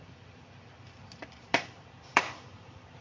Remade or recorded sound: remade